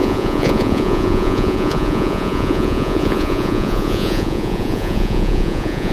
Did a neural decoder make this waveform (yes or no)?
yes